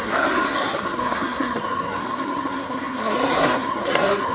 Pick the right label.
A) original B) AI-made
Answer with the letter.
B